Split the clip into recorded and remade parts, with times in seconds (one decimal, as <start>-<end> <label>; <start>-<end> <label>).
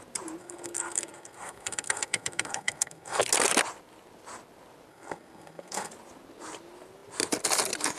0.0-0.4 recorded; 0.4-3.2 remade; 3.2-4.9 recorded; 4.9-5.9 remade; 5.9-8.0 recorded